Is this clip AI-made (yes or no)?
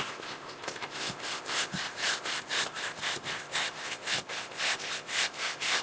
yes